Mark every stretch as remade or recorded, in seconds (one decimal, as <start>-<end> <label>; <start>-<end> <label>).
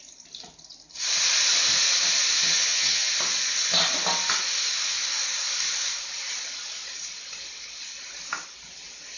0.0-2.5 recorded; 2.5-3.1 remade; 3.1-9.2 recorded